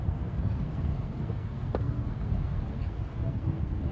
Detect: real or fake fake